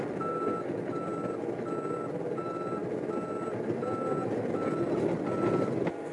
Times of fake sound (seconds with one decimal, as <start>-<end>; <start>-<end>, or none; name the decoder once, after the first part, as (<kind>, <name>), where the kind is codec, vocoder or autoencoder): none